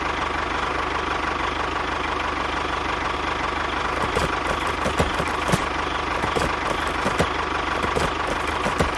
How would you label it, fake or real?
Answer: real